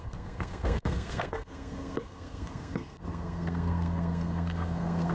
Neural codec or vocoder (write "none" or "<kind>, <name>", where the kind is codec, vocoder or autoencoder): codec, SNAC